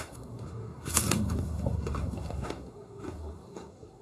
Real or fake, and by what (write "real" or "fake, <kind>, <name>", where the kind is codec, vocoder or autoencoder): fake, codec, SNAC